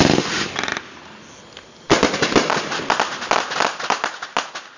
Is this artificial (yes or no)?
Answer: no